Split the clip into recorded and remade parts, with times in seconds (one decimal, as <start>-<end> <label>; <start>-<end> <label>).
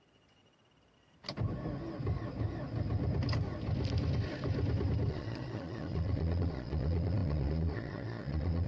0.0-0.4 remade; 0.4-5.1 recorded; 5.1-8.7 remade